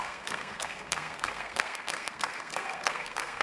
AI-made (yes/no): yes